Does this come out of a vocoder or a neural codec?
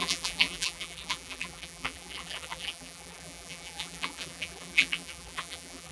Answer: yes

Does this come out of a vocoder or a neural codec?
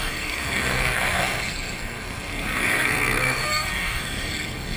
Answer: yes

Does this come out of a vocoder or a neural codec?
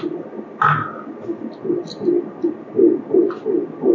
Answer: no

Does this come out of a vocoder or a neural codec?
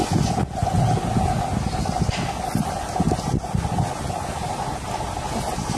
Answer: no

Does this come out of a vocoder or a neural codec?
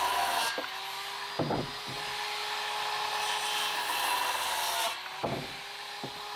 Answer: no